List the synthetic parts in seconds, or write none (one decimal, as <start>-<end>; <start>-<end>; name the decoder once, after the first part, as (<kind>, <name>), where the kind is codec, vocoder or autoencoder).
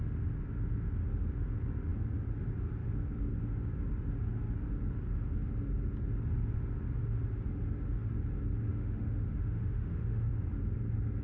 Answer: 8.7-10.3 (autoencoder, DAC-VAE)